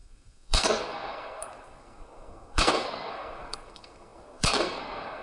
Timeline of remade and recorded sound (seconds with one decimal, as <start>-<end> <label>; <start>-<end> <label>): 0.0-5.2 remade